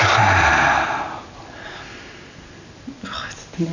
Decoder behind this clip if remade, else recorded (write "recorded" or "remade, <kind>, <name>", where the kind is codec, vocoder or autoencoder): recorded